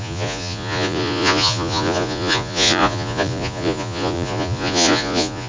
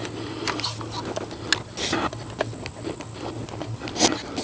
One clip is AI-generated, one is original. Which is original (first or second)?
second